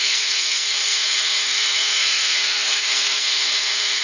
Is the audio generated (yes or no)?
yes